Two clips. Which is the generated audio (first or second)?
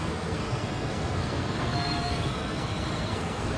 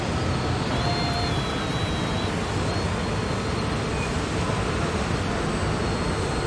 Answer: first